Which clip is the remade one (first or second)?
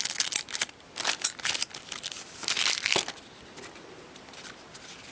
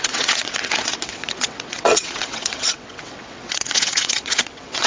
second